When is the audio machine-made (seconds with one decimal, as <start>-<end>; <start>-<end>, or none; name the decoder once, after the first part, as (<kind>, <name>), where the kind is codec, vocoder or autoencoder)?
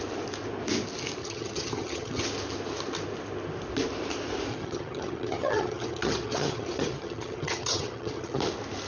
1.2-2.2 (vocoder, HiFi-GAN); 4.5-8.4